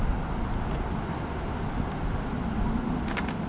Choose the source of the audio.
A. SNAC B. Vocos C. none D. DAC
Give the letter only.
C